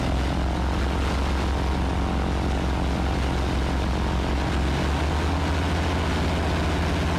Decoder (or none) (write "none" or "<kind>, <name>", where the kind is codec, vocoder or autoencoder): none